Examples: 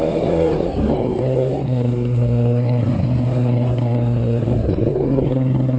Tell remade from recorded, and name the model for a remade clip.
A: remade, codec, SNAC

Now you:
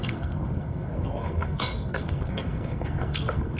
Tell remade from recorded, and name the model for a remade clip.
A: remade, codec, SNAC